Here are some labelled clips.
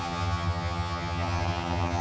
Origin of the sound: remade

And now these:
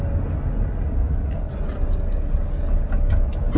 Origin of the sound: recorded